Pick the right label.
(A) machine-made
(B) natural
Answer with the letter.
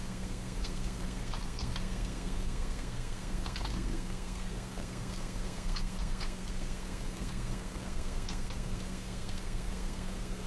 A